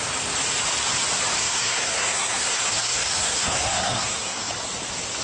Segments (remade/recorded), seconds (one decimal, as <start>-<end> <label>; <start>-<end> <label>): 0.0-1.4 recorded; 1.4-4.5 remade; 4.5-5.2 recorded